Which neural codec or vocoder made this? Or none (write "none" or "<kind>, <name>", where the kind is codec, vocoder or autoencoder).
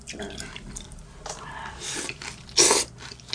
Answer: none